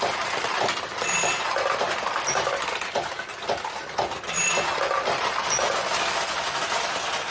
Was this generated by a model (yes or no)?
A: no